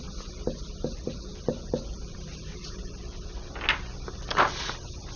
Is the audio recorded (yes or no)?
yes